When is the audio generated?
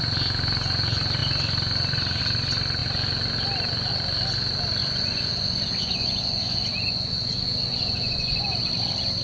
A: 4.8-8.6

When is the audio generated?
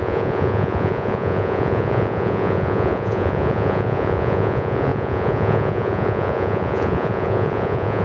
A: 0.0-8.0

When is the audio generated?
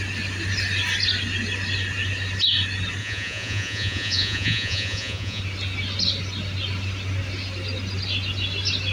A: 3.0-5.4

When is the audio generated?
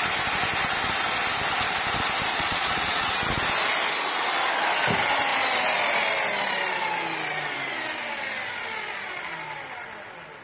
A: 2.3-3.1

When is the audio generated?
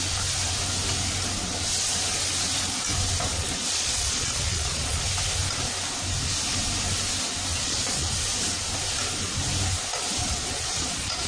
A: 3.3-5.0; 7.5-8.1; 10.2-11.3